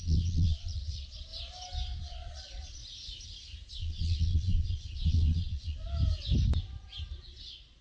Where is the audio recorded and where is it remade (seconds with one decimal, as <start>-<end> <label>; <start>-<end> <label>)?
0.0-1.3 remade; 1.3-2.0 recorded; 2.0-2.8 remade; 2.8-3.7 recorded; 3.7-5.8 remade; 5.8-7.2 recorded; 7.2-7.8 remade